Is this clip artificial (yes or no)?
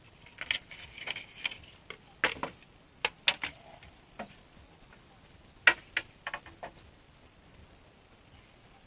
no